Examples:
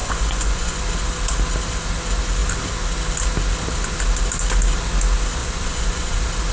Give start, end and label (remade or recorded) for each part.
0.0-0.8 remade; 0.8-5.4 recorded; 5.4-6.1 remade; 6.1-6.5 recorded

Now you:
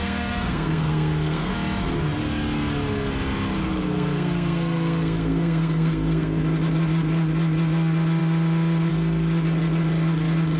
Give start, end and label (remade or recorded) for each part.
0.0-1.5 remade; 1.5-3.6 recorded; 3.6-6.4 remade; 6.4-10.6 recorded

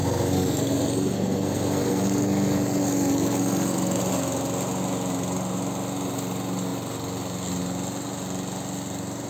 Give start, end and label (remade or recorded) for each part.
0.0-4.0 remade; 4.0-9.3 recorded

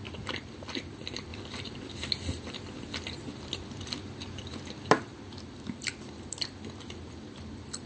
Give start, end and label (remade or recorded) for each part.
0.0-7.9 recorded